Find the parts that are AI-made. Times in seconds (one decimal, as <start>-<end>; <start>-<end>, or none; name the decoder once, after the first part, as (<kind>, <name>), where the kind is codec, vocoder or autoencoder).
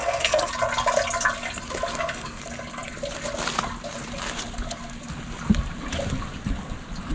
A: 0.0-0.5 (codec, SNAC); 1.9-2.4